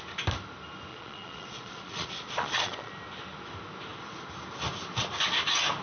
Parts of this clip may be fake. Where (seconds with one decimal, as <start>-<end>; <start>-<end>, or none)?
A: 0.9-2.9